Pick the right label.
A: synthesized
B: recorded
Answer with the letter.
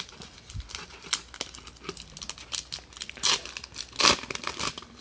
B